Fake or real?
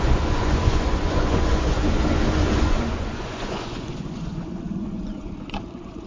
fake